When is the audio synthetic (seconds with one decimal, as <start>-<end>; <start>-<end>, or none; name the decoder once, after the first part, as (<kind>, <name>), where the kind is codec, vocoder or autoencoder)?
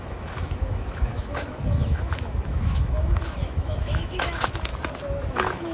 0.0-4.7 (autoencoder, DAC-VAE); 5.3-5.7